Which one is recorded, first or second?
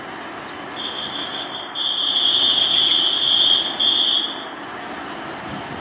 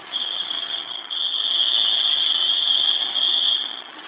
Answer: first